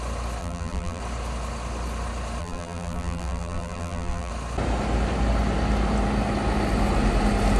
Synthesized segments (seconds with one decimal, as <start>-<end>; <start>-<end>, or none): 0.4-1.0; 2.4-4.3